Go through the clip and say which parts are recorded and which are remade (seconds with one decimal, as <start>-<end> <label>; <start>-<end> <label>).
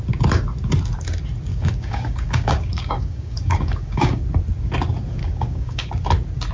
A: 0.0-1.5 recorded; 1.5-4.2 remade; 4.2-5.2 recorded; 5.2-5.9 remade; 5.9-6.5 recorded